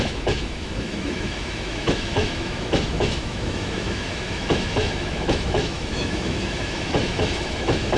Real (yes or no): no